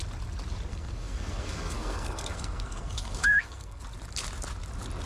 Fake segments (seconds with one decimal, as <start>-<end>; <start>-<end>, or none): 0.7-3.8

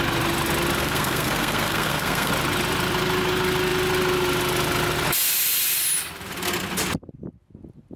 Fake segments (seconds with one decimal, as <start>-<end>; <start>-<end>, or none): 0.8-2.3